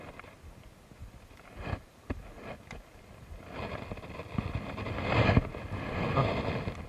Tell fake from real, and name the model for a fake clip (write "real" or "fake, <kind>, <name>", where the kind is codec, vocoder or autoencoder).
real